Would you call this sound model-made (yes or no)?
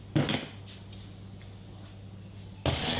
no